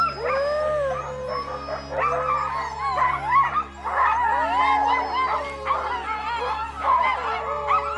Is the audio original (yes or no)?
yes